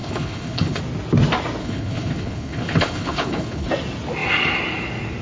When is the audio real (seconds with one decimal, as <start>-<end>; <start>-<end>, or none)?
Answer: 0.8-1.6; 3.7-5.2